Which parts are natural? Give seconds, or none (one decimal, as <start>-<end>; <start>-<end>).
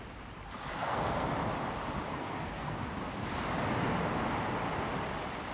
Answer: 0.0-0.7; 1.3-2.1; 2.9-5.5